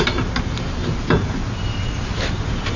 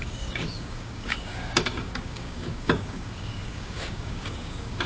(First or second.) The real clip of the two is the first